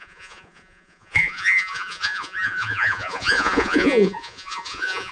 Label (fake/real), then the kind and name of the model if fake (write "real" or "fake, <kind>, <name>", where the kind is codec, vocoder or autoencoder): fake, vocoder, Vocos